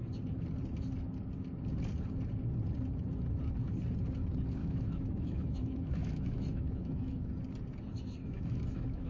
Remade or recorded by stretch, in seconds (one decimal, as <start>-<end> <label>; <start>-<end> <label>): 0.0-4.6 recorded; 4.6-7.3 remade; 7.3-8.2 recorded; 8.2-9.1 remade